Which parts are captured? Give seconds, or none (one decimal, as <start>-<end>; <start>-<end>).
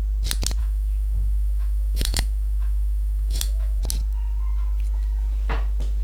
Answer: 0.0-0.6; 3.8-6.0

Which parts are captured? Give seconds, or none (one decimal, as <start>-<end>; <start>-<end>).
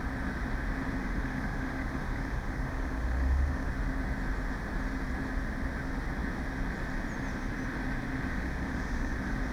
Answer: 0.0-1.0; 3.7-8.3; 9.1-9.5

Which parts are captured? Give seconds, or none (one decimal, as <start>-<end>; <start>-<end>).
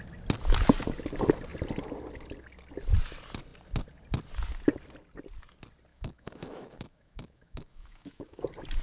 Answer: 0.0-5.9; 8.4-8.8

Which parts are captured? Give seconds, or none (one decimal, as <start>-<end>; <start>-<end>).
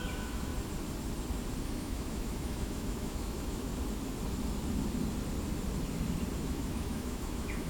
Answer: 0.5-1.6; 3.7-6.4